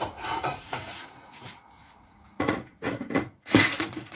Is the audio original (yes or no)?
no